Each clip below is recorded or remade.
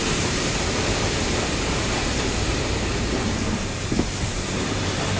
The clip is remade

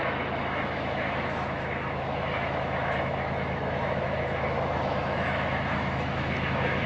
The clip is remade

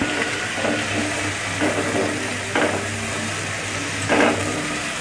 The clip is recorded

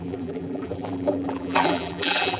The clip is remade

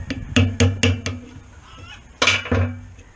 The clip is recorded